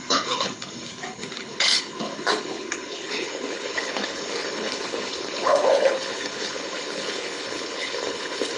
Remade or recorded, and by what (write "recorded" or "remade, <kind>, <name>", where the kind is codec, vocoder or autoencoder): remade, codec, HILCodec